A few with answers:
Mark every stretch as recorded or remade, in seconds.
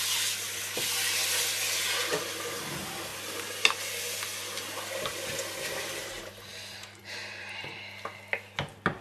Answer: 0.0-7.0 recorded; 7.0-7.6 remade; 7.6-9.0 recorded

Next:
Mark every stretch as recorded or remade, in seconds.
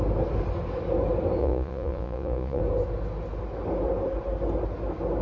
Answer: 0.0-1.4 recorded; 1.4-2.6 remade; 2.6-5.2 recorded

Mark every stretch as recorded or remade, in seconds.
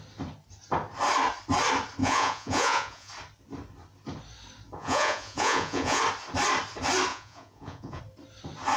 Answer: 0.0-2.0 recorded; 2.0-3.1 remade; 3.1-4.8 recorded; 4.8-6.0 remade; 6.0-7.1 recorded; 7.1-8.0 remade; 8.0-8.8 recorded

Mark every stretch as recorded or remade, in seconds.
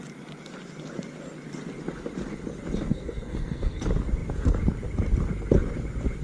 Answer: 0.0-2.9 recorded; 2.9-3.8 remade; 3.8-6.2 recorded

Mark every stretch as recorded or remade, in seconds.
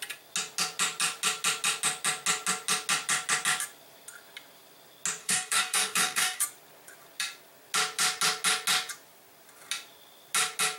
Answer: 0.0-5.2 recorded; 5.2-6.4 remade; 6.4-10.8 recorded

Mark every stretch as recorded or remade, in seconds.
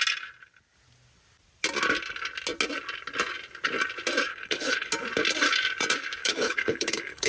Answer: 0.0-4.3 recorded; 4.3-4.9 remade; 4.9-6.2 recorded; 6.2-7.3 remade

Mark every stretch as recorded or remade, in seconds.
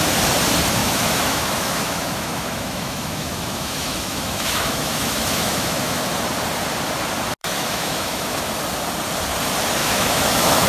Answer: 0.0-0.8 recorded; 0.8-6.0 remade; 6.0-7.4 recorded; 7.4-8.4 remade; 8.4-9.8 recorded; 9.8-10.7 remade